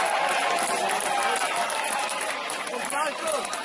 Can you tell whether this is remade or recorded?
recorded